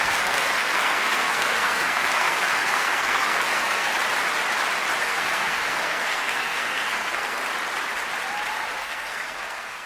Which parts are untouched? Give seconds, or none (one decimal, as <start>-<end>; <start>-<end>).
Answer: 3.9-5.0; 7.4-8.8